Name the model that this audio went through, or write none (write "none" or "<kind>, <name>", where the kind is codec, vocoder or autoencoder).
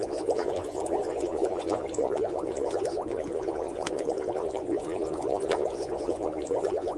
vocoder, Vocos